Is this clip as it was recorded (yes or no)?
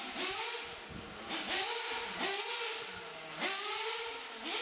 yes